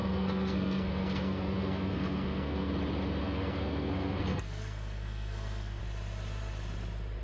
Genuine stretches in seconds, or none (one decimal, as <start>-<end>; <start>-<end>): 2.7-3.2; 5.8-7.2